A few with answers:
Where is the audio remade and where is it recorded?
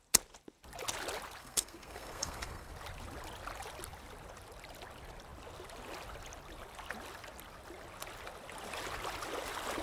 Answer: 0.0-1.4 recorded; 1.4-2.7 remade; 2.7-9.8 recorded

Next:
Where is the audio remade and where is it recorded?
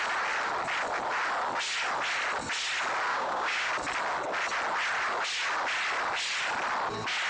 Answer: 0.0-3.1 recorded; 3.1-3.7 remade; 3.7-7.3 recorded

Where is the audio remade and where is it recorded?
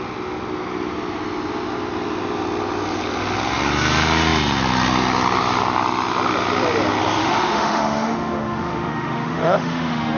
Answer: 0.0-7.2 recorded; 7.2-10.2 remade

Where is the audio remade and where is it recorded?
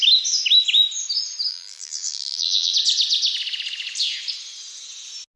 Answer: 0.0-1.5 recorded; 1.5-2.7 remade; 2.7-5.4 recorded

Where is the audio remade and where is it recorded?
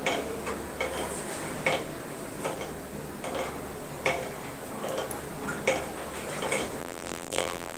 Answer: 0.0-6.8 recorded; 6.8-7.8 remade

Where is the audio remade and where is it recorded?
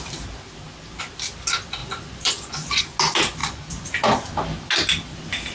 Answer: 0.0-1.8 recorded; 1.8-2.8 remade; 2.8-3.4 recorded; 3.4-4.2 remade; 4.2-5.5 recorded